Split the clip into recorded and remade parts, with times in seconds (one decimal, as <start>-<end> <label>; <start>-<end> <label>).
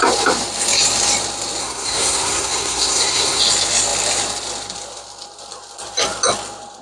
0.0-1.6 recorded; 1.6-3.4 remade; 3.4-6.8 recorded